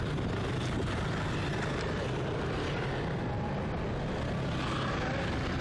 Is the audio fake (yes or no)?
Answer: no